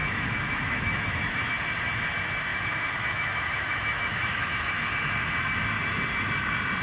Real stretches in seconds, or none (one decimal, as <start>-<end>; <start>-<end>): 1.5-2.5; 4.7-6.8